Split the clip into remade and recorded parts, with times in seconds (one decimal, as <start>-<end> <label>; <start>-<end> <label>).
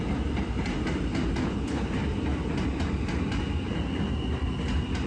0.0-1.4 recorded; 1.4-1.9 remade; 1.9-5.1 recorded